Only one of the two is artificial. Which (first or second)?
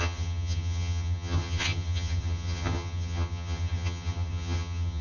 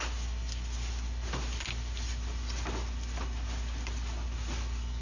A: first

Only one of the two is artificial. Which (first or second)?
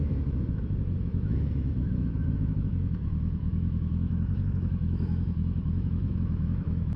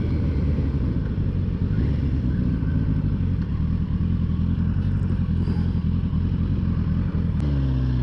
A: first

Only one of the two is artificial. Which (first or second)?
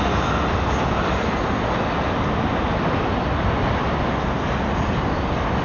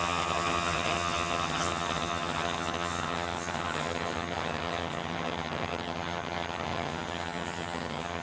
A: second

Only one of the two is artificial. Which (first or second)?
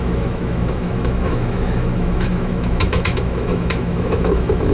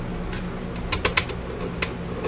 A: first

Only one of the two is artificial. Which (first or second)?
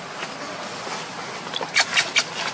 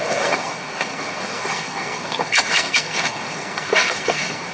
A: second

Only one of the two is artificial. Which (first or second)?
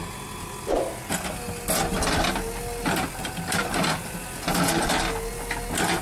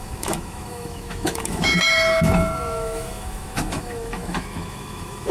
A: second